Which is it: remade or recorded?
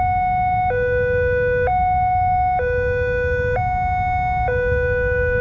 recorded